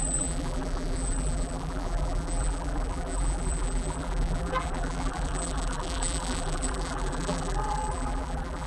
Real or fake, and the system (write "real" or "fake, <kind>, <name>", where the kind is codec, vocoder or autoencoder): fake, vocoder, BigVGAN v2